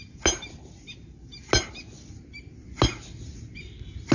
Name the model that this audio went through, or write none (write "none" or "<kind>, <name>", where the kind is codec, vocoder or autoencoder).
none